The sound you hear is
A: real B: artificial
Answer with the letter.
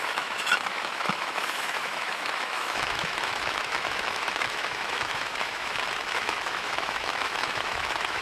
B